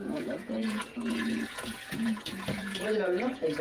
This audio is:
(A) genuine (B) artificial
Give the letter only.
B